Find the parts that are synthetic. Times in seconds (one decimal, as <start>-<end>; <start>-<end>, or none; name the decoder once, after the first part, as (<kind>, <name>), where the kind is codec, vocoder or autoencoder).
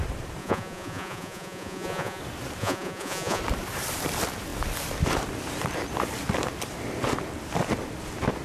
0.4-2.2 (vocoder, Vocos); 2.6-3.4